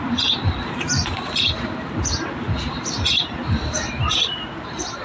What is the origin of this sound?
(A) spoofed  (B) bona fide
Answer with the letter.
A